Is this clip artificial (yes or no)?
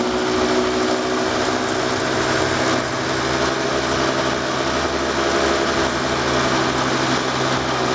no